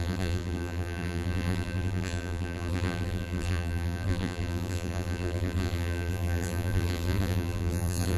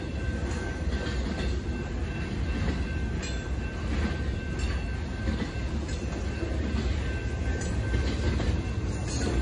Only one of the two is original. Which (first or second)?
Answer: second